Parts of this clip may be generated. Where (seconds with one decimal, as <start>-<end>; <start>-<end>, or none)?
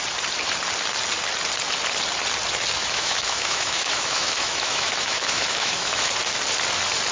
2.8-6.1